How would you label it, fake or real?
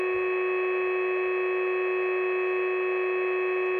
real